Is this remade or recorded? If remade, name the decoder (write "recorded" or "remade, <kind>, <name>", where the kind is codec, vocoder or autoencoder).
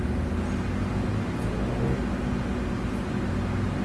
recorded